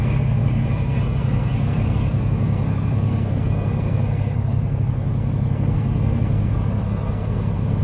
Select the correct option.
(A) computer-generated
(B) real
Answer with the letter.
A